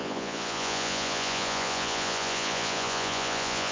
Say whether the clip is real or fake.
fake